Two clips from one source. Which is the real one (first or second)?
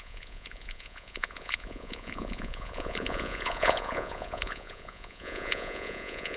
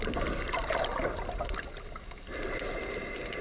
second